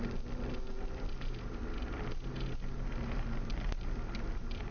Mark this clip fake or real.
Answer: real